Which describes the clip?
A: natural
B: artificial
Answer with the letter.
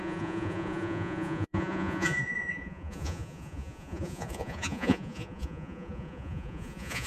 B